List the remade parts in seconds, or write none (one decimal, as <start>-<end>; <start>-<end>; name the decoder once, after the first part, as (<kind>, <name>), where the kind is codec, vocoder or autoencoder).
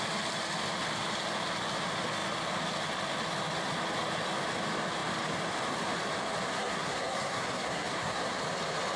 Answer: 6.5-8.4 (codec, SNAC)